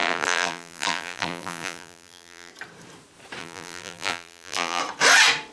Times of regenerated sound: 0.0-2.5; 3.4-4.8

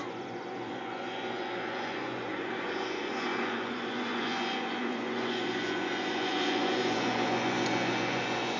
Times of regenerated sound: 0.0-8.6

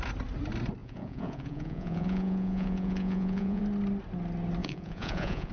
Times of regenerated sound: 0.8-3.6; 4.6-5.5